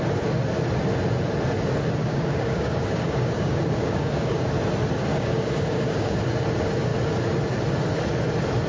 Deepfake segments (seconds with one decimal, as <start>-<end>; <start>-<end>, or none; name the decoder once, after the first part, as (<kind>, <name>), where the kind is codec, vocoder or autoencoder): 2.0-4.5 (codec, DAC); 5.1-6.2